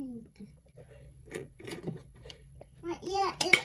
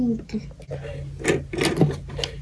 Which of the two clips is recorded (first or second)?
second